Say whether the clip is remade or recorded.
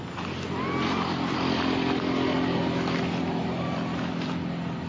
recorded